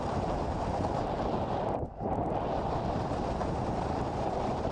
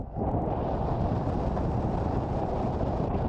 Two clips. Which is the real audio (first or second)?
second